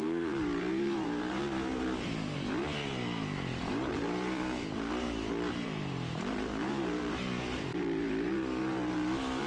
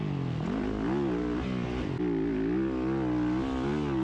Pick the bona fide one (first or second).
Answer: second